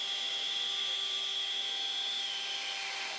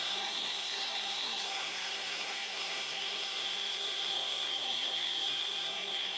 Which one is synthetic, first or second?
second